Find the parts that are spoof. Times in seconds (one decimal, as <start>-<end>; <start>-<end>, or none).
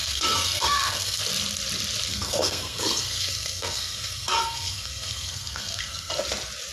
0.0-1.2; 2.1-6.1